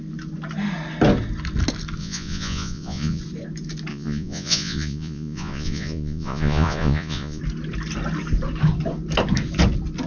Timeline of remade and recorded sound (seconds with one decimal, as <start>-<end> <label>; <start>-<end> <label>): 0.0-2.0 recorded; 2.0-3.2 remade; 3.2-3.9 recorded; 3.9-7.4 remade; 7.4-10.1 recorded